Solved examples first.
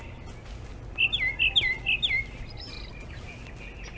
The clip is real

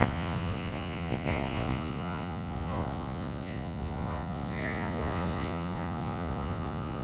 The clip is fake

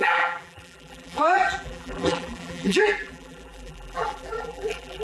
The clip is fake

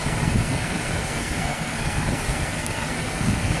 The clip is fake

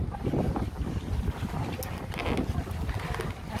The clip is real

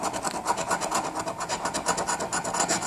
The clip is real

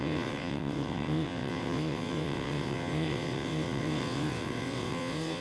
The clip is fake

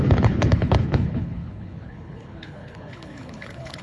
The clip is fake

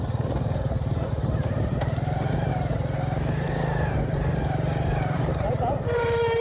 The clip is fake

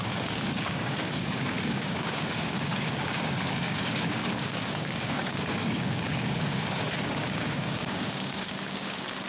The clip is fake